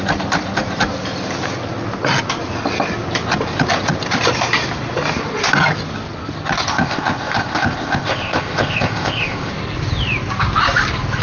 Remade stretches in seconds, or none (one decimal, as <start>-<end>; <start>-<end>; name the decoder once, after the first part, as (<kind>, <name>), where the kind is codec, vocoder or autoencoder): 6.7-9.5 (codec, ZipCodec)

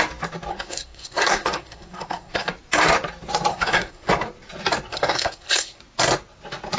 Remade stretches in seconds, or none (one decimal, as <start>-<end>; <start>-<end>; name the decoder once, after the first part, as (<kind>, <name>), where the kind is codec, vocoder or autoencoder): 0.5-2.5 (codec, SNAC); 3.5-4.1; 4.9-5.8

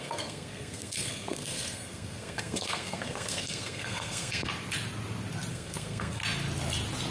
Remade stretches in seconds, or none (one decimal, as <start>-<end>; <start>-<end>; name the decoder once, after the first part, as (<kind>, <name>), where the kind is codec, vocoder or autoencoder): 0.0-4.5 (codec, SNAC); 5.5-6.2

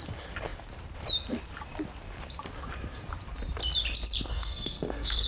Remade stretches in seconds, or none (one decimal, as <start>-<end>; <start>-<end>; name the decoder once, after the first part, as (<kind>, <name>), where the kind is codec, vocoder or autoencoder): 4.3-5.3 (codec, SNAC)

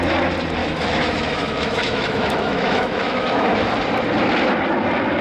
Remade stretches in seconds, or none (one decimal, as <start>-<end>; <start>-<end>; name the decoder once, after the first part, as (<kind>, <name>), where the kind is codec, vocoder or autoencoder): 0.6-3.7 (autoencoder, DAC-VAE)

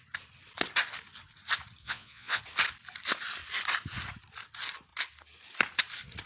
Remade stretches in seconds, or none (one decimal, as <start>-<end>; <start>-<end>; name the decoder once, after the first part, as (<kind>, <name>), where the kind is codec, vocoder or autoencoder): 1.8-2.4 (vocoder, Vocos)

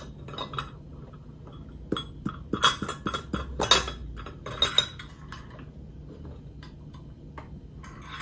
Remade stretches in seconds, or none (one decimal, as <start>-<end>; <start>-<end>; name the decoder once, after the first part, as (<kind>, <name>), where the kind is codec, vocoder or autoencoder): none

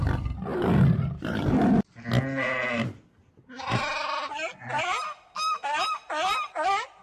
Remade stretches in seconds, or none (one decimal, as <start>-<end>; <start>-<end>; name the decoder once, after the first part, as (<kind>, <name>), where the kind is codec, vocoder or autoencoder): none